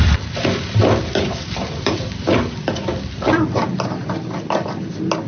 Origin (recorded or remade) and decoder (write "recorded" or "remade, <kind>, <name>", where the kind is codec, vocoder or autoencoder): remade, vocoder, BigVGAN v2